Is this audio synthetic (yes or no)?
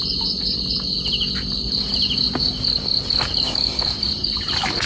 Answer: no